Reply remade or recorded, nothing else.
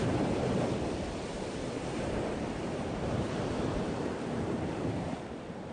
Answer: remade